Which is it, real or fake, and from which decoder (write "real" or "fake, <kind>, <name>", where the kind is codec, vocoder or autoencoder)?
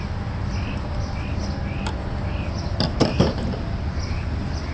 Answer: real